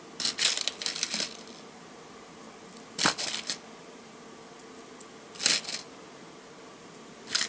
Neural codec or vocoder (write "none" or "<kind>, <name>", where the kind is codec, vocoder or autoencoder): none